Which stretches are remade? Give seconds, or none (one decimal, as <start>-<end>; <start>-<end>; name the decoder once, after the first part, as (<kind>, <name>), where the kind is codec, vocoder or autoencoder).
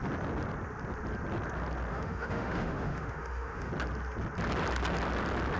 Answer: 1.9-3.7 (autoencoder, DAC-VAE)